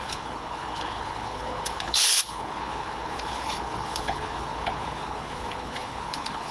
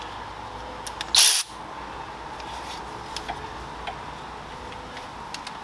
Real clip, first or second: second